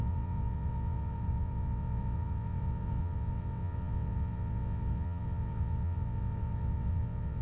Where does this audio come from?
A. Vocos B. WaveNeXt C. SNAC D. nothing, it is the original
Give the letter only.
B